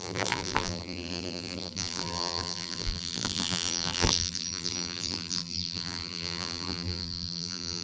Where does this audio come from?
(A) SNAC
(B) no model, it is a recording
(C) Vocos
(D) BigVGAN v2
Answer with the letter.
D